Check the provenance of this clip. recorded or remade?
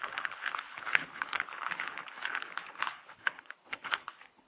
remade